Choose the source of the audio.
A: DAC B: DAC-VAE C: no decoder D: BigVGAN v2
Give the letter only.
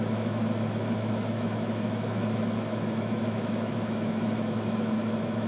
B